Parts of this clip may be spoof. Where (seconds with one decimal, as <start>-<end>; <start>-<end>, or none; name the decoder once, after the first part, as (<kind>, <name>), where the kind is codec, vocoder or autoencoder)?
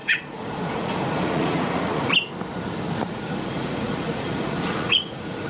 0.0-2.1 (vocoder, Vocos); 3.1-5.5